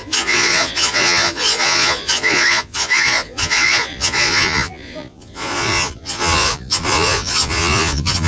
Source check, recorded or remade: remade